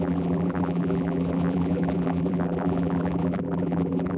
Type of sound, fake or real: fake